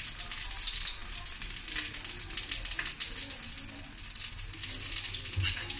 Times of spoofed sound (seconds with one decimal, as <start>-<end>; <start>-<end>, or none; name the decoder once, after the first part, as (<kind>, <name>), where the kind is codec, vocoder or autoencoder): none